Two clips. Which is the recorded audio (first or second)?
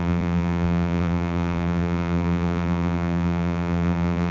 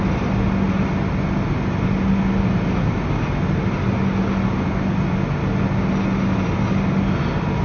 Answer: second